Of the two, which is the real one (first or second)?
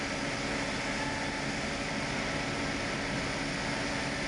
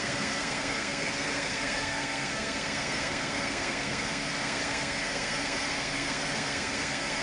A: first